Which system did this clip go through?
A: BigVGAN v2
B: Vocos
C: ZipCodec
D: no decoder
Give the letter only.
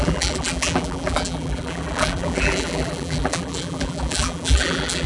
A